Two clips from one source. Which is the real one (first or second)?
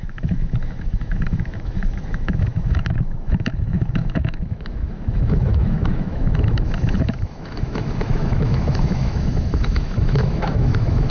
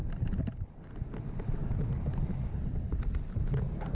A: second